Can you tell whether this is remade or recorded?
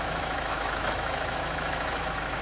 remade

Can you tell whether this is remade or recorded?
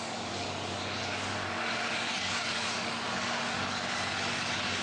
remade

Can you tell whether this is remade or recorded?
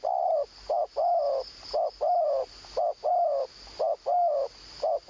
recorded